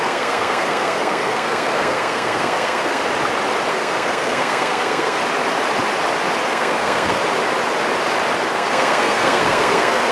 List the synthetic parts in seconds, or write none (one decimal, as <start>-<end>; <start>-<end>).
0.0-3.0; 3.7-5.2; 6.5-7.2; 8.5-10.1